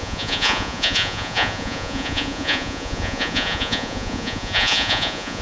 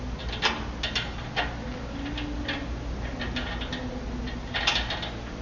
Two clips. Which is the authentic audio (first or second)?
second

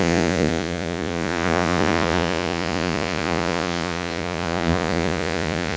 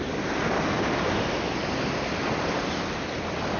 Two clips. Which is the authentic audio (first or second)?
second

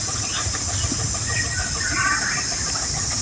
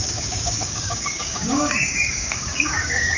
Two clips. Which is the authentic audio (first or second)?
first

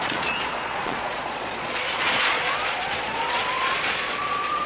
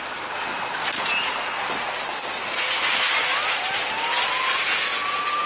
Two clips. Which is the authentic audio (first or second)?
second